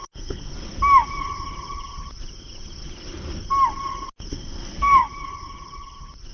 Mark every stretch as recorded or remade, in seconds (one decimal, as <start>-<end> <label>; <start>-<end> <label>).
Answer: 0.0-0.5 remade; 0.5-4.3 recorded; 4.3-5.0 remade; 5.0-6.3 recorded